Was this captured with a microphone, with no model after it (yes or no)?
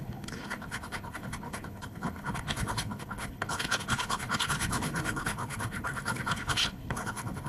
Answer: no